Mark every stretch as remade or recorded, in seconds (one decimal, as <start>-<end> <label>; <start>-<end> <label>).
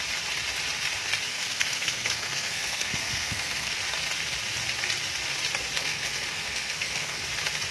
0.0-1.3 recorded; 1.3-3.8 remade; 3.8-5.8 recorded; 5.8-7.2 remade; 7.2-7.7 recorded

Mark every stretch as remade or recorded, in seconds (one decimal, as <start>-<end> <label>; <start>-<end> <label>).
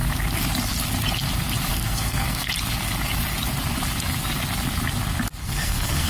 0.0-1.7 recorded; 1.7-2.5 remade; 2.5-5.4 recorded; 5.4-6.1 remade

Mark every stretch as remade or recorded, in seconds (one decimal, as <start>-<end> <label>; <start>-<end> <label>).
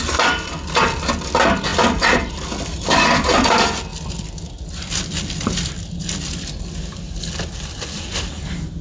0.0-8.8 recorded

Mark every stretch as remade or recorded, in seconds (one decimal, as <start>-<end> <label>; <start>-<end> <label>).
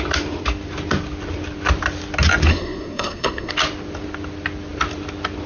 0.0-2.5 recorded; 2.5-3.5 remade; 3.5-5.5 recorded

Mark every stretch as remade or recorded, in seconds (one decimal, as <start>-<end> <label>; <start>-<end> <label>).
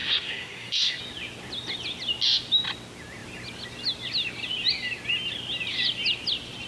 0.0-1.0 remade; 1.0-6.7 recorded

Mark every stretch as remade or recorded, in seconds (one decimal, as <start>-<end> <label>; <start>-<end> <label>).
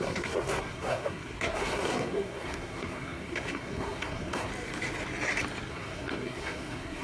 0.0-4.5 remade; 4.5-5.7 recorded; 5.7-7.0 remade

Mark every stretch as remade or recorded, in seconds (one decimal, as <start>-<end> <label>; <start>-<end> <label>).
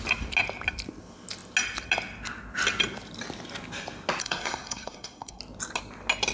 0.0-4.2 recorded; 4.2-5.4 remade; 5.4-6.3 recorded